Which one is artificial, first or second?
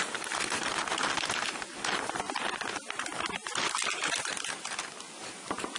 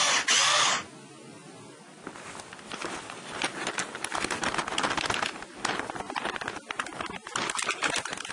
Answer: first